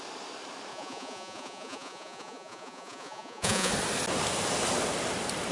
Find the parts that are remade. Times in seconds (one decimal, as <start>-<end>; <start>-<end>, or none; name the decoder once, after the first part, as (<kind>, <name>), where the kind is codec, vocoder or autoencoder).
0.7-3.7 (vocoder, Vocos)